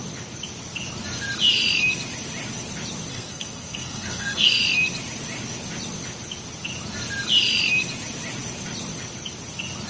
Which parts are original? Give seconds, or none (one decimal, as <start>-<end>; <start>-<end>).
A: 0.0-3.1; 4.6-9.9